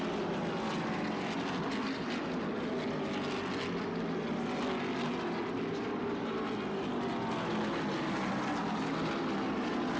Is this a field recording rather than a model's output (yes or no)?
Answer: yes